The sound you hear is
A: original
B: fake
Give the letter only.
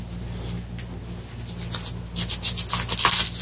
A